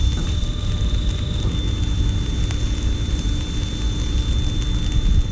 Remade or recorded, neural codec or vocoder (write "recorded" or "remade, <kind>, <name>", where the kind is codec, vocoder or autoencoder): recorded